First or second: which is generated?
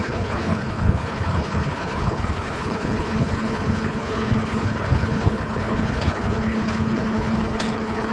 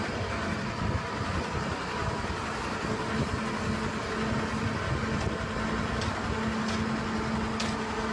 first